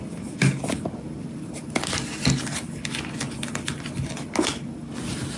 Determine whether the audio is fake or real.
real